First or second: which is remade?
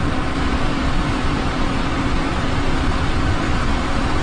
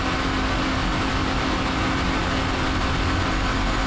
first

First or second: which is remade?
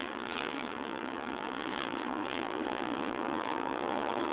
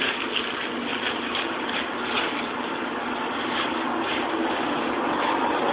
first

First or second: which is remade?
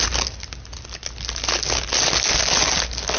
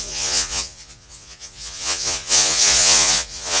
second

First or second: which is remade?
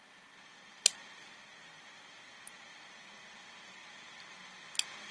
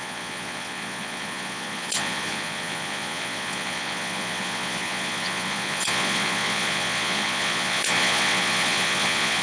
second